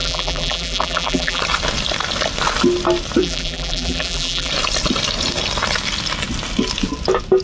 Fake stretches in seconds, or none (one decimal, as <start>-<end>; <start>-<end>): 0.0-1.4; 3.2-4.5